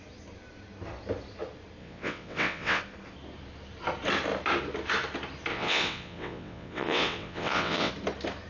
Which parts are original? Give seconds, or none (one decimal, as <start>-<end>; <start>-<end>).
0.0-1.8; 2.8-5.5; 7.9-8.5